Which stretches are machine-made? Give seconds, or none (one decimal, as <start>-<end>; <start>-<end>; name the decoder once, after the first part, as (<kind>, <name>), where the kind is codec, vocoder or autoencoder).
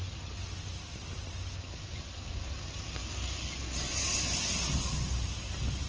none